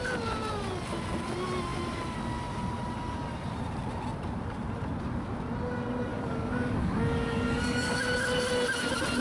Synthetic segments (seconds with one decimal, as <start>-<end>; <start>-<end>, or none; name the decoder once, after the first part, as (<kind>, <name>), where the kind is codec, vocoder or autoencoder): 6.1-8.0 (codec, DAC)